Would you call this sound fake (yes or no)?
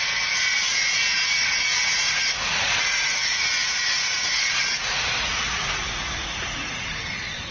yes